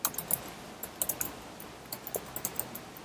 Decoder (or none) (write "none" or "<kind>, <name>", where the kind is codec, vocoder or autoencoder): none